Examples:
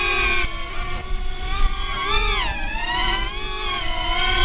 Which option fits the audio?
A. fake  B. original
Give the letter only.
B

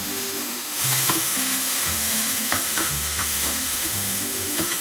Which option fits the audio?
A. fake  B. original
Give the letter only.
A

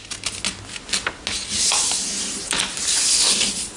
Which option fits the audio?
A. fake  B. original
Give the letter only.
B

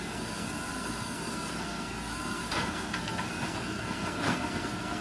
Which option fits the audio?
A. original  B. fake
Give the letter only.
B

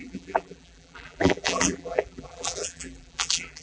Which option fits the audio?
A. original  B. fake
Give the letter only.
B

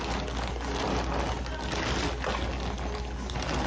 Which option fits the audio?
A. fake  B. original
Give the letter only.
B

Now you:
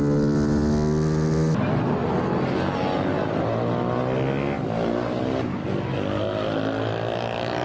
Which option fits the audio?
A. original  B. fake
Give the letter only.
A